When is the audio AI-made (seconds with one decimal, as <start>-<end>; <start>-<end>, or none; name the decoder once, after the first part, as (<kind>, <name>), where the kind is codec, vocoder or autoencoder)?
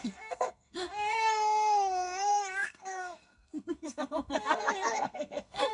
0.0-5.7 (codec, SNAC)